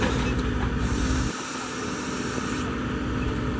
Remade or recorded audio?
recorded